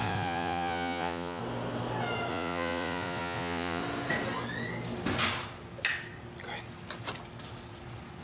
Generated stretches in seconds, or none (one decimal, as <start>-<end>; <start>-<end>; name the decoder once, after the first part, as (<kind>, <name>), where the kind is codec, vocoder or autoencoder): 0.0-1.4 (vocoder, Vocos); 2.3-3.8